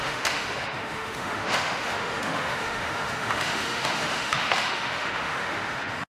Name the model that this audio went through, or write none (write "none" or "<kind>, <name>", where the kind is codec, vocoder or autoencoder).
autoencoder, DAC-VAE